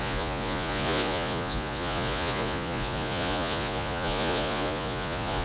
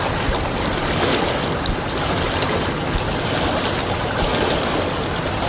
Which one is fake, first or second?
first